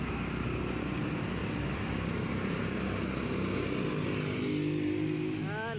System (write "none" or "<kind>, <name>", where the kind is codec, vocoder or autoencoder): none